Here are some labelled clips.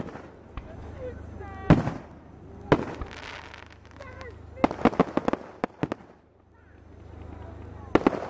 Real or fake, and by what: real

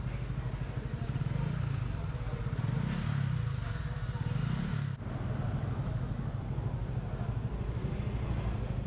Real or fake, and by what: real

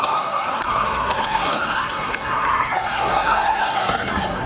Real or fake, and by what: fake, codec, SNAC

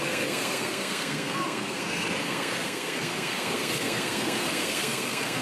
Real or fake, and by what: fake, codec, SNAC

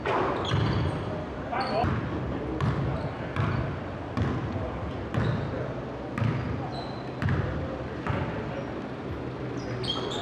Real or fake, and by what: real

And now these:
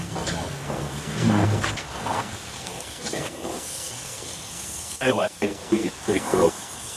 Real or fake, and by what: fake, codec, SNAC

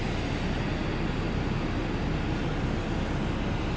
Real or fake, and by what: real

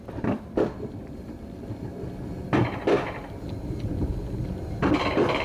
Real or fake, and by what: real